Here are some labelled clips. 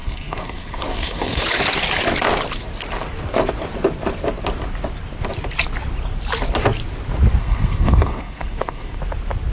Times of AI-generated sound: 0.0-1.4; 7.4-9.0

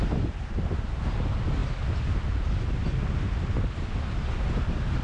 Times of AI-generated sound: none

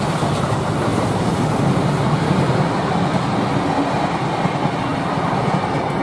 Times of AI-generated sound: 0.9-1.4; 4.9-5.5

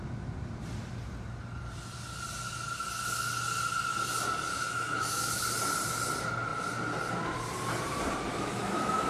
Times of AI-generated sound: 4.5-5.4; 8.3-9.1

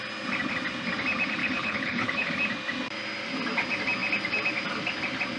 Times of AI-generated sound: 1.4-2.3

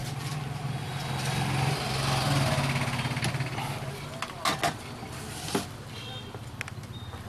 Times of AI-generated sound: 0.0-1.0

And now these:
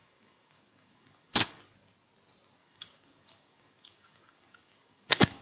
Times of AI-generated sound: 0.0-1.6; 2.6-5.4